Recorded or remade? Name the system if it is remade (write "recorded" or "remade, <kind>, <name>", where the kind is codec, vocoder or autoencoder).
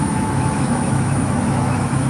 remade, autoencoder, DAC-VAE